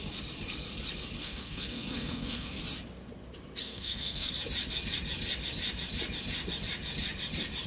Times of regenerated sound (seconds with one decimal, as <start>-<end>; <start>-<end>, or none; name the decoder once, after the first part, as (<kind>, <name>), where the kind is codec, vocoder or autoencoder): 1.2-2.6 (codec, SNAC); 3.6-4.3